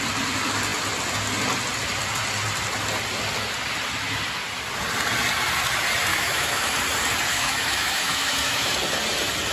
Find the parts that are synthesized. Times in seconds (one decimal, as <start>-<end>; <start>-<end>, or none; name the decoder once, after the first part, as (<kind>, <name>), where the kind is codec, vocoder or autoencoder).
6.1-6.7 (autoencoder, DAC-VAE); 7.3-8.7